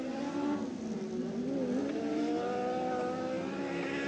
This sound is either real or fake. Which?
real